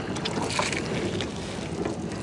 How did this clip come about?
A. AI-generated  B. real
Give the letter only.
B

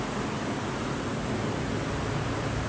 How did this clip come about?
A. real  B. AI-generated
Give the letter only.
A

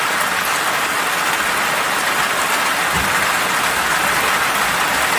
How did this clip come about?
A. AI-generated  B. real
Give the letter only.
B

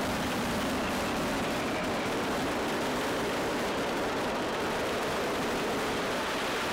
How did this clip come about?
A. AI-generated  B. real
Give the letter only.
A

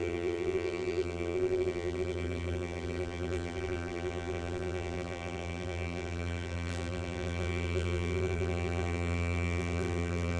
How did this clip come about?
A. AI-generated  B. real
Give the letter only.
A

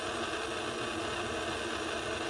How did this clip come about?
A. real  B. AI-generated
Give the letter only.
A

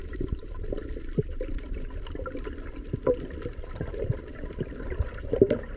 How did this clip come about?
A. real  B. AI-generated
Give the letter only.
B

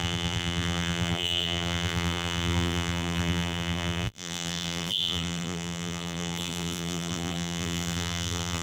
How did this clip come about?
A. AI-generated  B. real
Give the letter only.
A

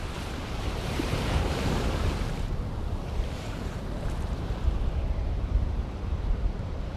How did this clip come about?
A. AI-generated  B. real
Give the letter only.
A